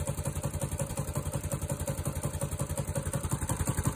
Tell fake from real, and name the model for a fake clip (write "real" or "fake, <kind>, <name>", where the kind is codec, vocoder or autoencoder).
fake, vocoder, BigVGAN v2